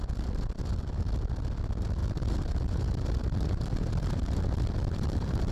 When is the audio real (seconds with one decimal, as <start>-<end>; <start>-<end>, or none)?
0.0-2.0